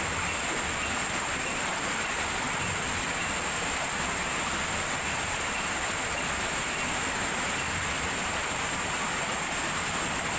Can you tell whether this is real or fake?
real